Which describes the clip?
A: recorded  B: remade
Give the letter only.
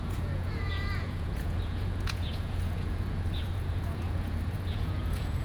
B